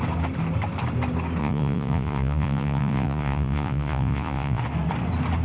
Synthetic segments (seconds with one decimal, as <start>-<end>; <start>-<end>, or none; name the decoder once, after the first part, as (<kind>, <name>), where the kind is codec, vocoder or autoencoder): 1.4-4.6 (vocoder, Vocos)